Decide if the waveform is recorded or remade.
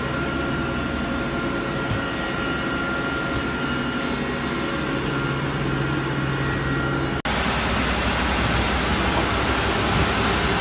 recorded